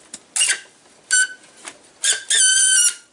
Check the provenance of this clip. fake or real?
real